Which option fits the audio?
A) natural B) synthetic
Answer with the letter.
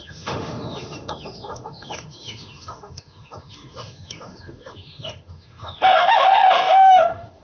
B